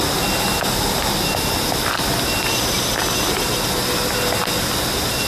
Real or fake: real